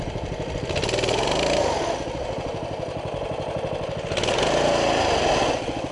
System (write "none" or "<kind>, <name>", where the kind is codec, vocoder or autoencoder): none